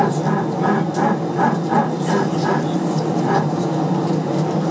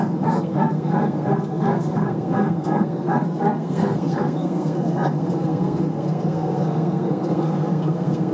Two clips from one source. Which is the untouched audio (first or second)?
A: first